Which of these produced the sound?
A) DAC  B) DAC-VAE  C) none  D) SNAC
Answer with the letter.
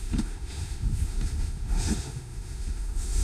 B